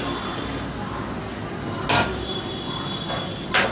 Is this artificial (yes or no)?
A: no